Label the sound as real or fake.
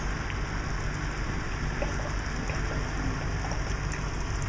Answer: real